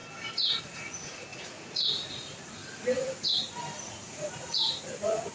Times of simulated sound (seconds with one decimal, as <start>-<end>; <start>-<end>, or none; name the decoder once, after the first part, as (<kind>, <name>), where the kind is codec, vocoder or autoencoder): 0.6-2.6 (vocoder, Vocos); 3.8-5.3